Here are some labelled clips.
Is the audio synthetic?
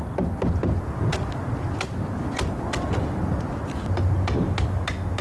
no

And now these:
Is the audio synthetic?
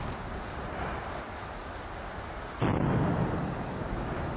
no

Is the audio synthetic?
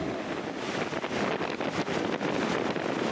no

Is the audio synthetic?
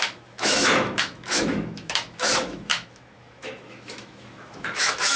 yes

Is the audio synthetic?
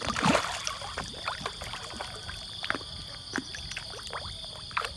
no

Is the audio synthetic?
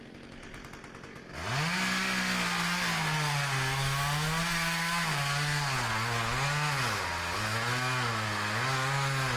no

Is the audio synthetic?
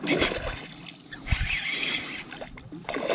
no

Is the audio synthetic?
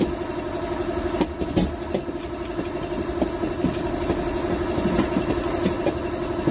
no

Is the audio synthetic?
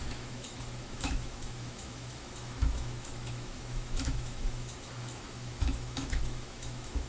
yes